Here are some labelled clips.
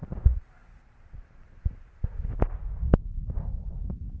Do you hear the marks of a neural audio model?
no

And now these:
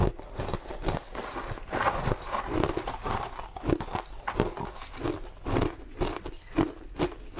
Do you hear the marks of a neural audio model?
no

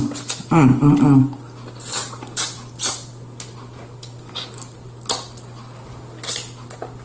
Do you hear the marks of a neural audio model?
no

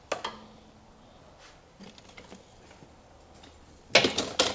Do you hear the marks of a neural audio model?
no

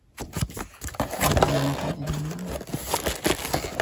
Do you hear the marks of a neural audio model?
no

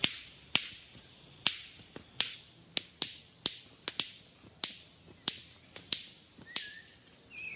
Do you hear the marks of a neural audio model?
no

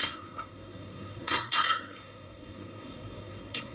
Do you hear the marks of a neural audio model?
yes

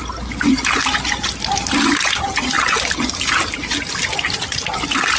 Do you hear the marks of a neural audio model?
no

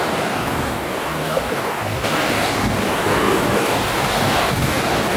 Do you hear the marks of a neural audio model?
yes